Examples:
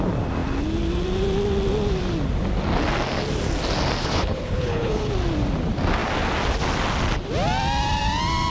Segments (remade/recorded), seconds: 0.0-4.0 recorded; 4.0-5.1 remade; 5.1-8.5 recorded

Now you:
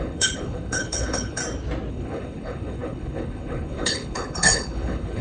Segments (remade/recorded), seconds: 0.0-1.4 remade; 1.4-1.9 recorded; 1.9-5.2 remade

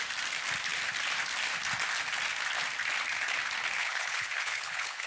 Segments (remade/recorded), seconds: 0.0-3.8 recorded; 3.8-5.1 remade